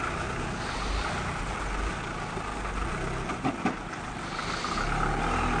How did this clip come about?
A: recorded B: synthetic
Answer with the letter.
A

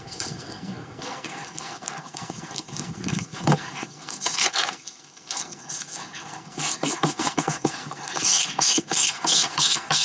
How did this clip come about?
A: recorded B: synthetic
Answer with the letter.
B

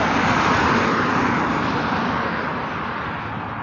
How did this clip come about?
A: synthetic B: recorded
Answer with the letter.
B